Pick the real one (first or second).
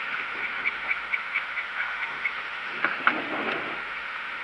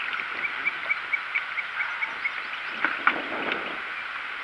second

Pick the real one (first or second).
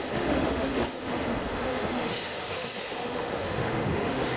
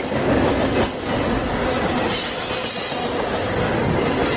second